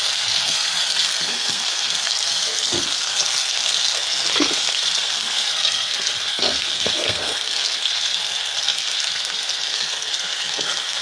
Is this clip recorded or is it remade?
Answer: remade